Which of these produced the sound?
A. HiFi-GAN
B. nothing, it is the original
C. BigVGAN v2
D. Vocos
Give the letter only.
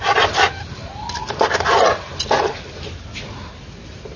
B